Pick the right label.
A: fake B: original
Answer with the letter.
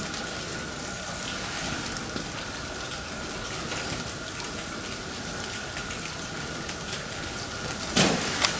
B